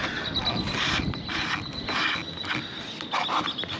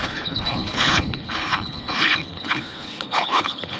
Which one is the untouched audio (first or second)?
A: first